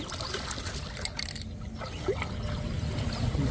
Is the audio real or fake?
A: real